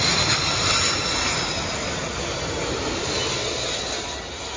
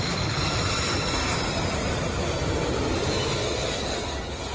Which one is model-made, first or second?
second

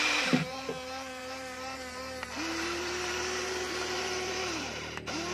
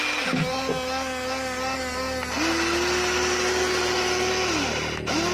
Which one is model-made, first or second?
first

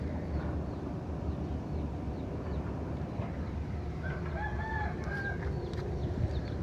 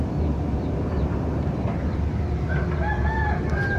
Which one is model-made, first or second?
first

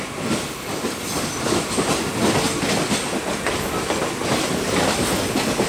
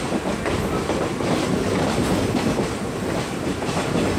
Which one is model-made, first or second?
second